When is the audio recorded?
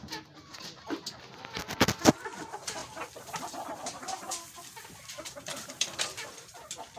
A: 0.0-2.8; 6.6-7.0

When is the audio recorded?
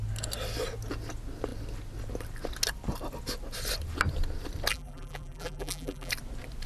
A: 0.0-4.7; 6.1-6.7